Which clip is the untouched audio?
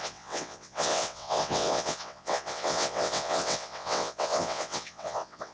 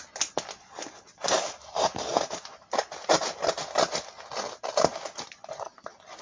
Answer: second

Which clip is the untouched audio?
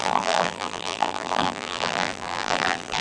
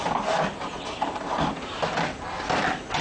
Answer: second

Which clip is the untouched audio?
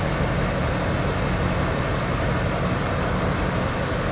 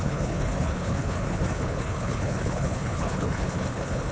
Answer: first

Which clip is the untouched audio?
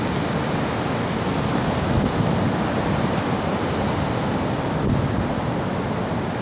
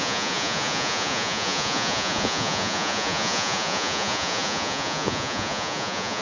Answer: first